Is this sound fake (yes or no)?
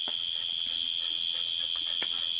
no